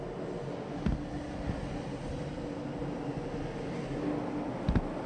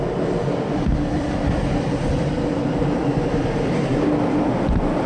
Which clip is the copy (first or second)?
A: second